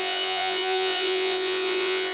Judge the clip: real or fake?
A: fake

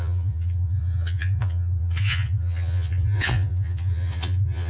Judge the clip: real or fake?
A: fake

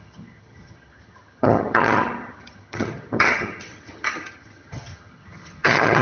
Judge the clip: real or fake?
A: fake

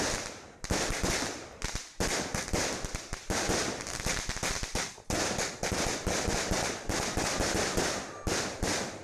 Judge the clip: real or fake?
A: real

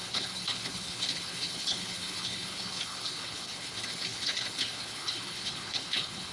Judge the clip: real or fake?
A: fake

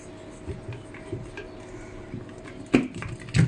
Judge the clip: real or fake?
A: real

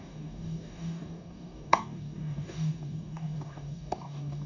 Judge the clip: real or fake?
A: fake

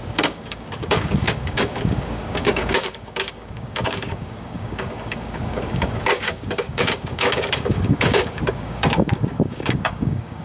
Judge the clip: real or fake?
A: fake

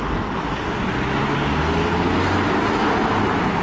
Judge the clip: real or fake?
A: real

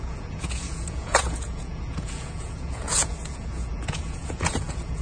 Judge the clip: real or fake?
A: fake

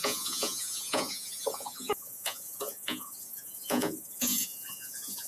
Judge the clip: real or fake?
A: fake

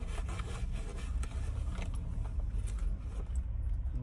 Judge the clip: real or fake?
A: real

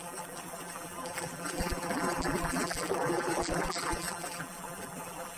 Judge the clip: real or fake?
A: fake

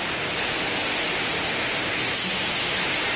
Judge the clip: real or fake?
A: real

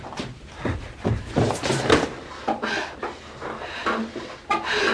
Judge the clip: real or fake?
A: real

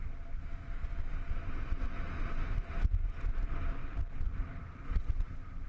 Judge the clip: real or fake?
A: real